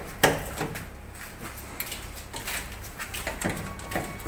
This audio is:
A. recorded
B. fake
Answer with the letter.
A